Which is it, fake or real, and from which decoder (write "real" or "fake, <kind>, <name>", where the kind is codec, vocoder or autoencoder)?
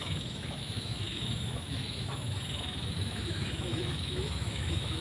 fake, autoencoder, DAC-VAE